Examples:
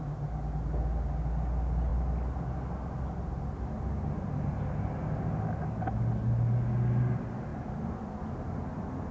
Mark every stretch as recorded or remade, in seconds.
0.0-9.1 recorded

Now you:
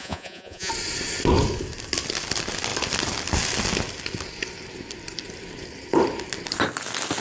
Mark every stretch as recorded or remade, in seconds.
0.0-0.7 remade; 0.7-7.2 recorded

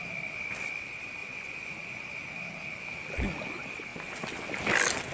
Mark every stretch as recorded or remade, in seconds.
0.0-1.2 recorded; 1.2-2.0 remade; 2.0-5.1 recorded

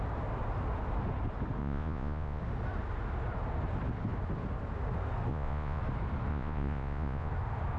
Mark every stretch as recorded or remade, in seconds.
0.0-1.6 recorded; 1.6-2.4 remade; 2.4-5.3 recorded; 5.3-5.8 remade; 5.8-6.3 recorded; 6.3-7.3 remade; 7.3-7.8 recorded

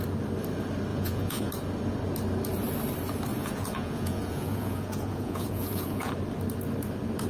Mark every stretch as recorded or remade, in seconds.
0.0-0.9 recorded; 0.9-1.5 remade; 1.5-3.3 recorded; 3.3-6.1 remade; 6.1-7.3 recorded

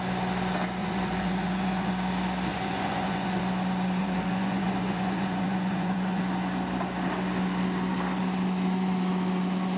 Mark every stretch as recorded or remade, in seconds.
0.0-0.8 recorded; 0.8-1.9 remade; 1.9-2.5 recorded; 2.5-3.4 remade; 3.4-4.0 recorded; 4.0-6.2 remade; 6.2-9.8 recorded

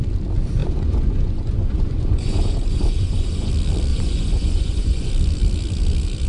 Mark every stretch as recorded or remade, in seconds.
0.0-0.6 recorded; 0.6-3.5 remade; 3.5-3.9 recorded; 3.9-5.1 remade; 5.1-6.3 recorded